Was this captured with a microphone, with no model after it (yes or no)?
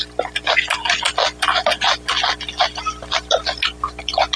yes